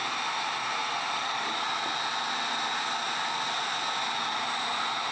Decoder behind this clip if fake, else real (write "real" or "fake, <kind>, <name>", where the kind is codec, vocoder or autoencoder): real